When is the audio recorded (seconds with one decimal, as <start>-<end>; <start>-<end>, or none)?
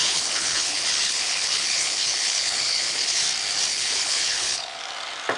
3.2-3.7; 4.8-5.4